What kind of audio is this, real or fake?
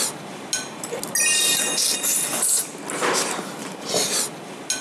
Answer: real